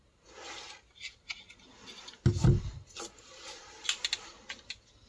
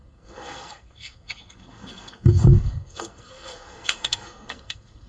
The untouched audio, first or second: first